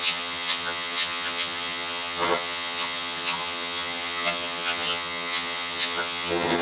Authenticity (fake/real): fake